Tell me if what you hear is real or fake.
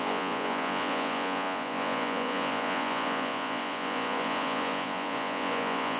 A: fake